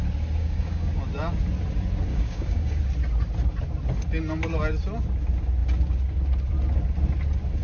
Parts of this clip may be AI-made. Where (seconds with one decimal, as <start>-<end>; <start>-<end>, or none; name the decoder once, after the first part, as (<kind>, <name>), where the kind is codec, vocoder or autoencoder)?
0.4-0.9 (codec, DAC); 2.1-2.8